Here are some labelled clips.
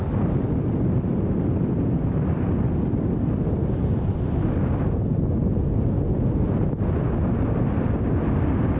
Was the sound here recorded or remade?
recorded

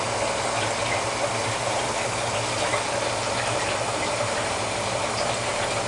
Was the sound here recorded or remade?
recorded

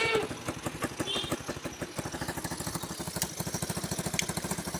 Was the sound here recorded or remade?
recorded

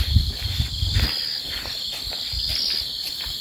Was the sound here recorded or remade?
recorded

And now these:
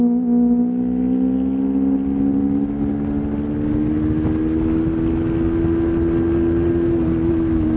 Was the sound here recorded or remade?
recorded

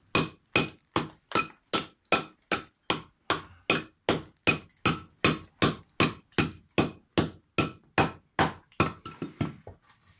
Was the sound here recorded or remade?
recorded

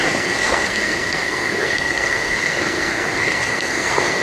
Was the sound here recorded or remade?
remade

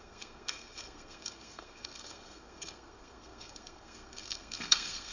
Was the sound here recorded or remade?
remade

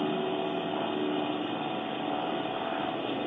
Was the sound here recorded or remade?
recorded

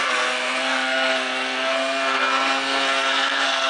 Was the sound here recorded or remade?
remade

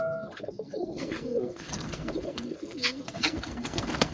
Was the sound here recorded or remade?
remade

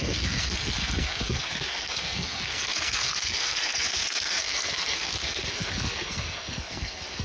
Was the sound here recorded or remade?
remade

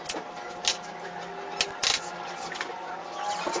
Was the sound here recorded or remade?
recorded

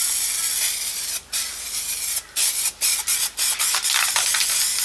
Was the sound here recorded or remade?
recorded